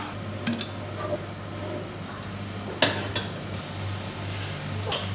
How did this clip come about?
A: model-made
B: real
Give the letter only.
B